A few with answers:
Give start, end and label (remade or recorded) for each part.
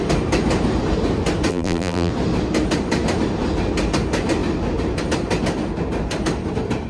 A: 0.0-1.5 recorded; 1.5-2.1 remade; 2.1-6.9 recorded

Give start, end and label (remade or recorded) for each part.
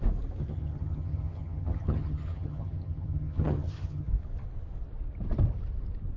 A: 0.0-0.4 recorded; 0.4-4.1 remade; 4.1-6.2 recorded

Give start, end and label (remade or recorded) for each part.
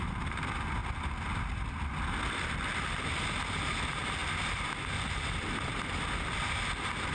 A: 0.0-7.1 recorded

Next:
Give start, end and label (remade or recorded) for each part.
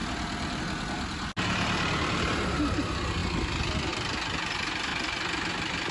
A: 0.0-4.9 recorded; 4.9-5.5 remade; 5.5-5.9 recorded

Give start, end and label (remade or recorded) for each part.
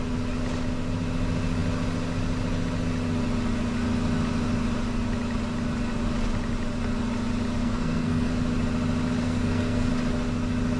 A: 0.0-7.6 recorded; 7.6-8.3 remade; 8.3-9.2 recorded; 9.2-9.9 remade; 9.9-10.8 recorded